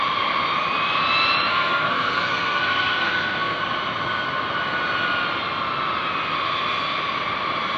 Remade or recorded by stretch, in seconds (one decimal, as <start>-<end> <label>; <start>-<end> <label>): 0.0-1.5 recorded; 1.5-3.6 remade; 3.6-7.8 recorded